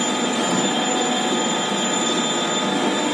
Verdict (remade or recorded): recorded